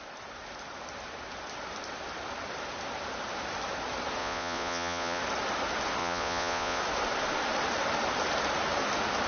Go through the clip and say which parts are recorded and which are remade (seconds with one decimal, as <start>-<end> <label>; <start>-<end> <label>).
0.0-4.2 recorded; 4.2-5.2 remade; 5.2-6.0 recorded; 6.0-6.8 remade; 6.8-9.3 recorded